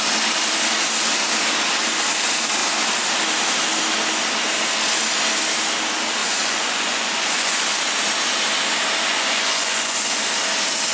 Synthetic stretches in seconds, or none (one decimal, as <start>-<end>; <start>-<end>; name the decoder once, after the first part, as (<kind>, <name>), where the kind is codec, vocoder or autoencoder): 6.2-7.8 (vocoder, Vocos); 9.1-10.3